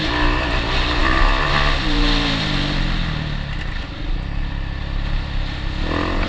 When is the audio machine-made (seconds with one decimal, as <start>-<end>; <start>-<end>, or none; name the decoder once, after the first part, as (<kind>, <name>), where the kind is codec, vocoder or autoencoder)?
none